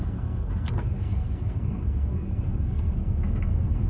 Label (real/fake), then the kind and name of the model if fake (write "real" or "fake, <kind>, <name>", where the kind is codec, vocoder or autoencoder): fake, codec, SNAC